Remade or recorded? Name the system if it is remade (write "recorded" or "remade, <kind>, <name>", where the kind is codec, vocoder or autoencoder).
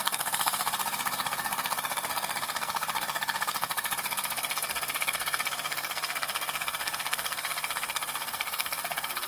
remade, codec, SNAC